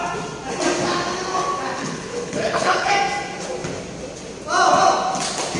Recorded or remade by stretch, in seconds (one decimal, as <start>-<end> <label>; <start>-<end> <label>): 0.0-1.8 recorded; 1.8-2.9 remade; 2.9-5.6 recorded